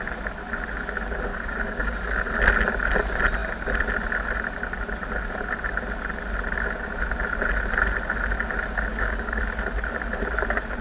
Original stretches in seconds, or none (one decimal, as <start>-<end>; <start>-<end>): 0.0-1.3; 2.3-8.9; 9.4-10.8

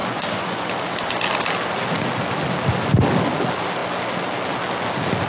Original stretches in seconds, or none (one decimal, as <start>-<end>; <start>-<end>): 0.7-5.3

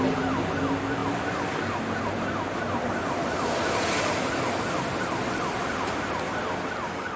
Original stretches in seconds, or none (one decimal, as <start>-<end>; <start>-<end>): 0.0-7.2